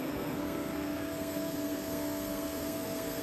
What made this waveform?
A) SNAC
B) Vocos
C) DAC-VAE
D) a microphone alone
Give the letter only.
A